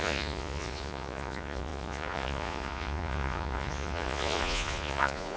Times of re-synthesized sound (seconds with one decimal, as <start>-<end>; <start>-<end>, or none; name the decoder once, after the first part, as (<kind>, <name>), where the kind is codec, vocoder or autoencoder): 0.0-5.4 (vocoder, Vocos)